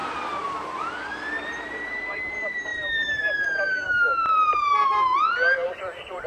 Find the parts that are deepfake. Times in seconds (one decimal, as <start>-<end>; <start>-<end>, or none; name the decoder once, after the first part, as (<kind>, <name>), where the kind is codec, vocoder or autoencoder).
0.0-6.3 (vocoder, BigVGAN v2)